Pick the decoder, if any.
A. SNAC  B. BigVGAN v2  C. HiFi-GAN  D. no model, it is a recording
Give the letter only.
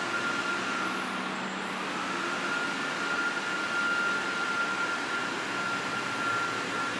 D